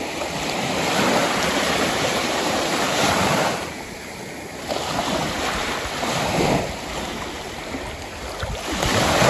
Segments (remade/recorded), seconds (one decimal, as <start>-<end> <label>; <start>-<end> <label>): 0.0-1.2 recorded; 1.2-4.1 remade; 4.1-9.3 recorded

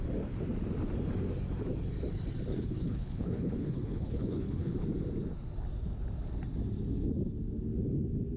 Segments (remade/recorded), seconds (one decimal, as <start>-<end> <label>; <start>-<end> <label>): 0.0-2.5 recorded; 2.5-4.7 remade; 4.7-8.4 recorded